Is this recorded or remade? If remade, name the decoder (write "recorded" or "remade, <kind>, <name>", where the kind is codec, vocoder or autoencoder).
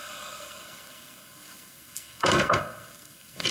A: remade, codec, SNAC